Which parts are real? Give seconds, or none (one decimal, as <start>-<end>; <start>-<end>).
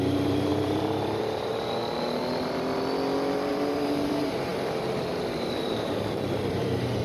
1.8-3.5